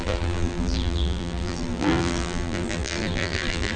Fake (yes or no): yes